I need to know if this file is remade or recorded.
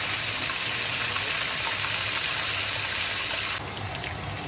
recorded